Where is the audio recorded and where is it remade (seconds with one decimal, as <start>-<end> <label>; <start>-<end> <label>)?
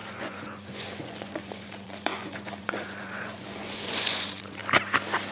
0.0-4.6 remade; 4.6-5.3 recorded